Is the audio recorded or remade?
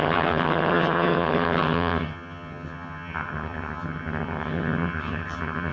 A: remade